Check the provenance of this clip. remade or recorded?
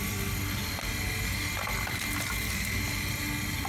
recorded